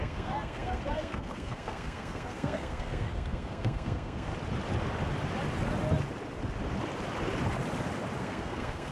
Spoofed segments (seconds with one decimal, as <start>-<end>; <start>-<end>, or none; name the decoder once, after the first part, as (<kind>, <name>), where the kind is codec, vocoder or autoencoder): 0.0-4.3 (codec, SNAC); 8.2-8.9